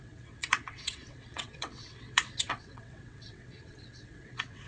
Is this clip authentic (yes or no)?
no